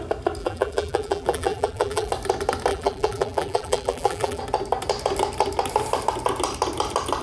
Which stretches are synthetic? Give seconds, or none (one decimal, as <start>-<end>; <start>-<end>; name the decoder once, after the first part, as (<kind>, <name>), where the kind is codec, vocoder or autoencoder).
0.4-2.1 (vocoder, BigVGAN v2); 2.7-4.4